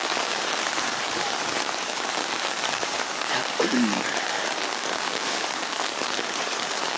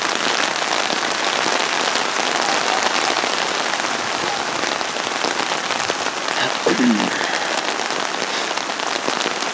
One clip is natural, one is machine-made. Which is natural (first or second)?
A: second